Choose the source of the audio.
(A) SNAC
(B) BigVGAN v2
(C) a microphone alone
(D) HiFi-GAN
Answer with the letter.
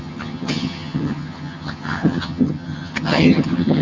D